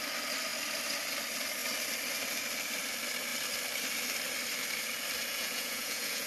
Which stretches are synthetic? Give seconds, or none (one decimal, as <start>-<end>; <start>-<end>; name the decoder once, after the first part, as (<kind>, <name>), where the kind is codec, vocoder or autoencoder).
5.3-6.3 (vocoder, Vocos)